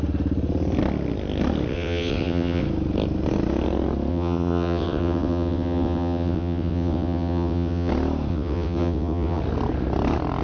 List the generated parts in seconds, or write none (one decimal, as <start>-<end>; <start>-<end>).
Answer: 1.7-2.6; 4.1-7.9; 8.3-9.4